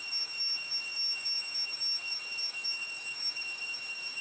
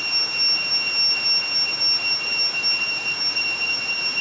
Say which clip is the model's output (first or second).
first